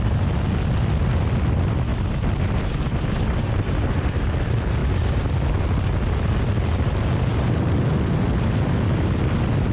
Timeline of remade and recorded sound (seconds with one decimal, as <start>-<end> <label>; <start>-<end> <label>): 0.0-9.7 recorded